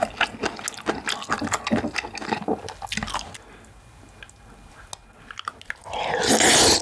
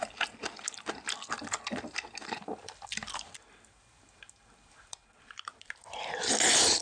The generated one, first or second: second